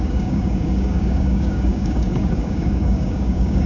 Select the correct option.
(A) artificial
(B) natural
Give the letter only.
A